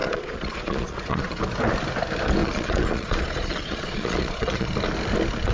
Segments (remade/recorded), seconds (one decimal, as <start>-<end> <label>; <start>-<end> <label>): 0.0-1.4 remade; 1.4-2.4 recorded; 2.4-4.7 remade; 4.7-5.5 recorded